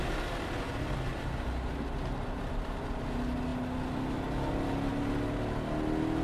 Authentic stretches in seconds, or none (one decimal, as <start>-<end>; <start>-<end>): 0.0-6.2